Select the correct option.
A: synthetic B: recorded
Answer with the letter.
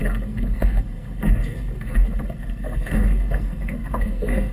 A